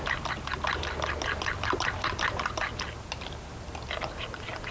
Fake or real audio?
real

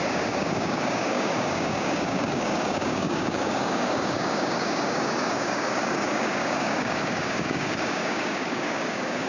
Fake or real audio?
fake